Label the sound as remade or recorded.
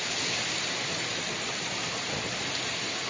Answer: remade